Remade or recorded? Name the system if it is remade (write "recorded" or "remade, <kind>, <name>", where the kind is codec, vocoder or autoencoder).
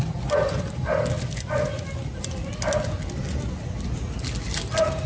recorded